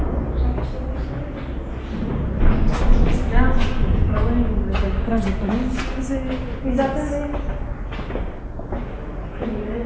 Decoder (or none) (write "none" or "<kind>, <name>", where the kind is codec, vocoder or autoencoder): none